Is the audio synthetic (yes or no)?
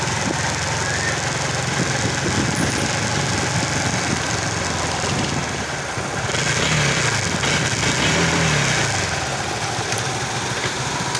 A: no